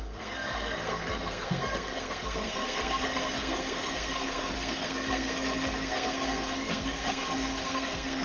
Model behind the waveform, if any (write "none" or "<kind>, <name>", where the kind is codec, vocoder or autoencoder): codec, SNAC